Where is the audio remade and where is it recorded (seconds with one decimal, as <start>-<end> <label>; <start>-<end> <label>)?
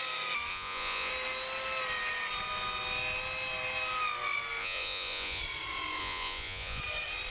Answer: 0.0-0.5 recorded; 0.5-1.1 remade; 1.1-4.6 recorded; 4.6-5.4 remade; 5.4-6.0 recorded; 6.0-6.8 remade; 6.8-7.3 recorded